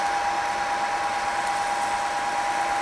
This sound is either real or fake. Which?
real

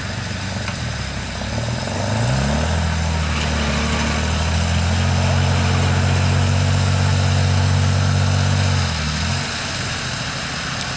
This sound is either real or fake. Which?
real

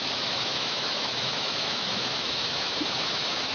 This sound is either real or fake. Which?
fake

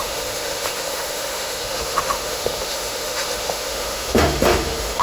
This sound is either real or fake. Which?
fake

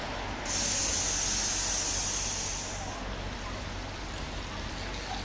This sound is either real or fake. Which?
real